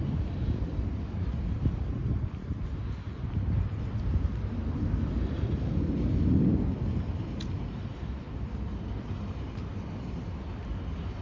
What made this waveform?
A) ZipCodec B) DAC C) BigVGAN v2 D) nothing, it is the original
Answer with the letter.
D